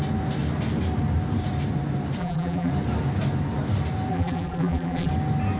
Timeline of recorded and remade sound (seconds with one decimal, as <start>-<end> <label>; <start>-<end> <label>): 0.0-2.2 recorded; 2.2-2.7 remade; 2.7-4.1 recorded; 4.1-5.1 remade; 5.1-5.6 recorded

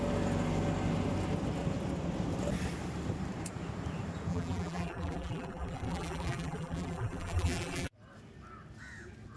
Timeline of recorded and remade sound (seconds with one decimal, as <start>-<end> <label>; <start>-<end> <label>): 0.0-4.3 recorded; 4.3-7.9 remade; 7.9-9.4 recorded

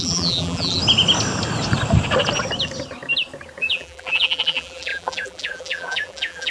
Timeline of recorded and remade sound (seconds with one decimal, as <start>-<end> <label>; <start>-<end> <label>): 0.0-0.8 remade; 0.8-3.6 recorded; 3.6-6.5 remade